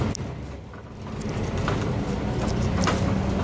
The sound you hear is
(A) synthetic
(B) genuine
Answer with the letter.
B